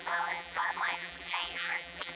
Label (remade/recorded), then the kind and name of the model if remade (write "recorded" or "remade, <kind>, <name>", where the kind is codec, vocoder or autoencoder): remade, vocoder, BigVGAN v2